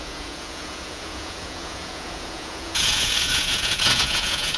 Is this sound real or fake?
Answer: fake